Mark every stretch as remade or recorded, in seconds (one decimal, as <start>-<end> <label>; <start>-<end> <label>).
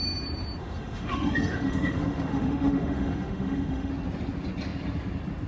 0.0-0.6 recorded; 0.6-3.9 remade; 3.9-5.5 recorded